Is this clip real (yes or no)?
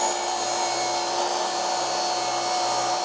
yes